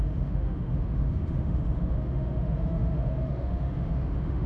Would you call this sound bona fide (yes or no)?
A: no